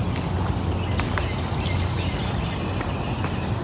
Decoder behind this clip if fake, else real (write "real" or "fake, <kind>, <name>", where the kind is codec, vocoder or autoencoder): real